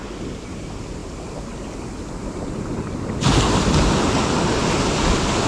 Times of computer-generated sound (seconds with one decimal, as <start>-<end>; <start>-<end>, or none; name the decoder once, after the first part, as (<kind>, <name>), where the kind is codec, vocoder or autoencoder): none